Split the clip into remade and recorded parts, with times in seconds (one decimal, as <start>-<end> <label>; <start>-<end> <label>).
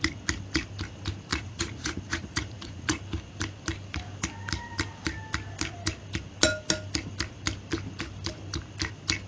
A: 0.0-1.3 recorded; 1.3-3.0 remade; 3.0-9.3 recorded